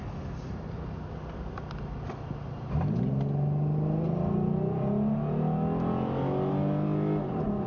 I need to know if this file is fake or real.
real